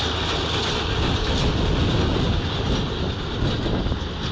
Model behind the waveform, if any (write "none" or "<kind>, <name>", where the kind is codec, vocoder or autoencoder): none